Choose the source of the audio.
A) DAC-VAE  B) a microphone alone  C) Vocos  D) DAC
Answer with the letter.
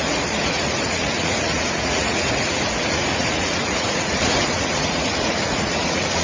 C